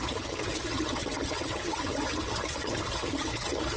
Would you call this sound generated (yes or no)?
yes